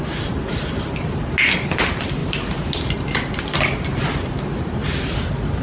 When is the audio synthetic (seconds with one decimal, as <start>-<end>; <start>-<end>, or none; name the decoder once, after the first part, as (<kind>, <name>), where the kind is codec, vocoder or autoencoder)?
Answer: none

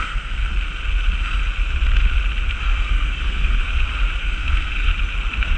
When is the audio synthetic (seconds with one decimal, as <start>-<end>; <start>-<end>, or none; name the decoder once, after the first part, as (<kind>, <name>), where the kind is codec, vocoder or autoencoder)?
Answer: 0.0-0.5 (codec, SNAC); 2.6-3.6; 4.2-4.9

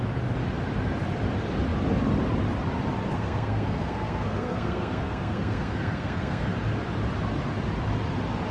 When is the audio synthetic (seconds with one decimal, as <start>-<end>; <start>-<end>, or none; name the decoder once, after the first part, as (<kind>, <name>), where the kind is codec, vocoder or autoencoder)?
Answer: 3.1-6.5 (codec, SNAC)

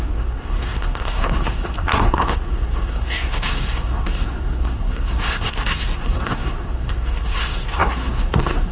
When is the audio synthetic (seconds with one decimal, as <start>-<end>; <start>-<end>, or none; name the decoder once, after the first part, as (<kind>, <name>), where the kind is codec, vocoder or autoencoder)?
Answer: 0.0-8.7 (codec, SNAC)